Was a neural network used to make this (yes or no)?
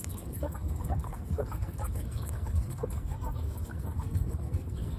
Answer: yes